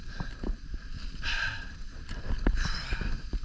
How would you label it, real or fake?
real